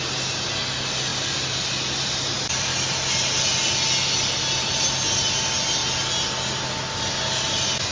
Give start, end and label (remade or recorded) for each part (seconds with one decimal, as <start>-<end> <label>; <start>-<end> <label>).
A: 0.0-7.9 recorded